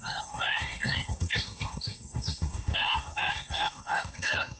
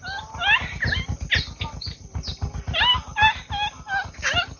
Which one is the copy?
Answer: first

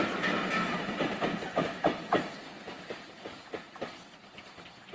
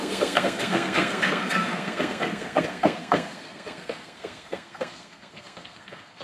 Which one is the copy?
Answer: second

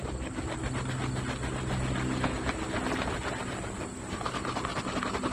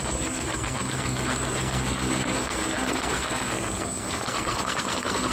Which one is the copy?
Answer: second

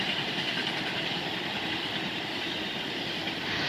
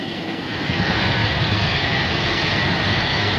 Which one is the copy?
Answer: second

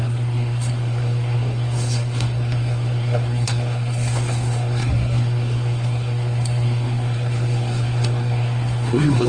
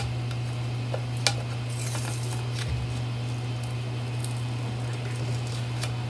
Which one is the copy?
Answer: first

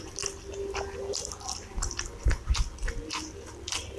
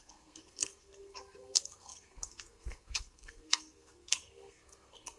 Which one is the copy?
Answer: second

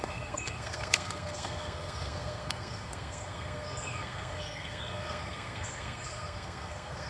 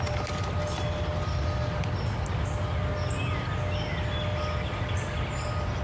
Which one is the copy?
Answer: first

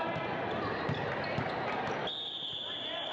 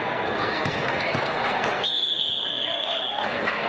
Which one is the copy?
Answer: second